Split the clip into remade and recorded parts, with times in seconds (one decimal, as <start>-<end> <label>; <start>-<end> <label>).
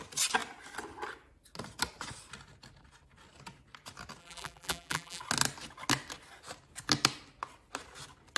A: 0.0-4.2 recorded; 4.2-5.2 remade; 5.2-8.4 recorded